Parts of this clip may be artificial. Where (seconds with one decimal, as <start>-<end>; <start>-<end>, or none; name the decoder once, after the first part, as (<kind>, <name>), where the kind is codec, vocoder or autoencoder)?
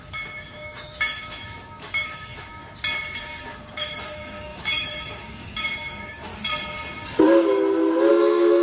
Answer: 0.0-2.6 (autoencoder, DAC-VAE); 3.2-6.3; 8.1-8.6